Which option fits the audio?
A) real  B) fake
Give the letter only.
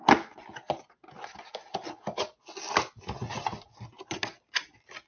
A